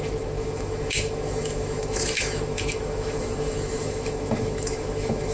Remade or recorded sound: remade